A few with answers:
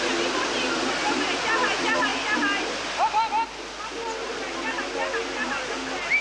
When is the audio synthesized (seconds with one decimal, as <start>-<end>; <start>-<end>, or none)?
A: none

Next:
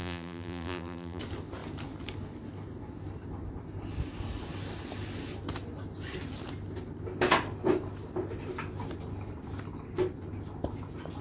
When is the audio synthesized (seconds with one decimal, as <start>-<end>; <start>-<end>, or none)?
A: 0.0-1.2

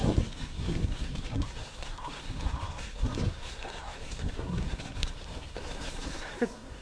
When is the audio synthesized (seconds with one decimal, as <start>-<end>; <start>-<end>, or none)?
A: 0.0-6.8